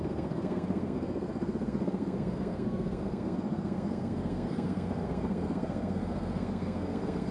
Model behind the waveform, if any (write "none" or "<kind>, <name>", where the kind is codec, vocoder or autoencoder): codec, SNAC